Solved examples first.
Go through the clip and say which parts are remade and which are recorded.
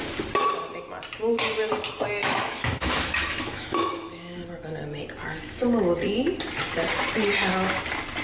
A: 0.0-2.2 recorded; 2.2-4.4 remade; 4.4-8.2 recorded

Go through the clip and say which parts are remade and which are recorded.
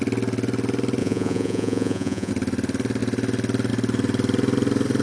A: 0.0-1.0 recorded; 1.0-2.3 remade; 2.3-5.0 recorded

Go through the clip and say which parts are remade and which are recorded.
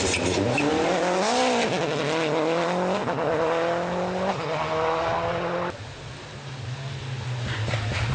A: 0.0-8.1 recorded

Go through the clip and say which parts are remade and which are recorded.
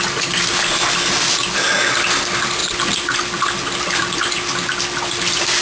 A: 0.0-5.6 recorded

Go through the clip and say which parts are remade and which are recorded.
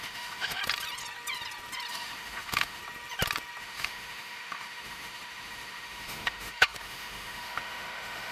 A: 0.0-0.6 remade; 0.6-1.9 recorded; 1.9-2.8 remade; 2.8-3.6 recorded; 3.6-8.3 remade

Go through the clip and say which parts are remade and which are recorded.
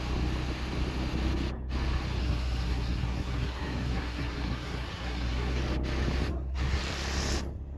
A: 0.0-2.2 recorded; 2.2-5.6 remade; 5.6-6.3 recorded; 6.3-6.8 remade; 6.8-7.8 recorded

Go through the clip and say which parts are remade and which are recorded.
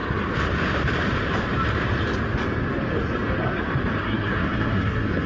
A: 0.0-4.0 recorded; 4.0-5.3 remade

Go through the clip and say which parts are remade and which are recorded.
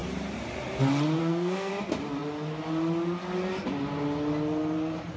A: 0.0-1.2 recorded; 1.2-1.7 remade; 1.7-5.2 recorded